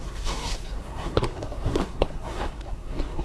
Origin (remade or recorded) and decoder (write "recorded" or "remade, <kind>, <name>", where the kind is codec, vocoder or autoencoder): remade, codec, SNAC